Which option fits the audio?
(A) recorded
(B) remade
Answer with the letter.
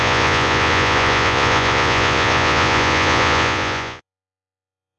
B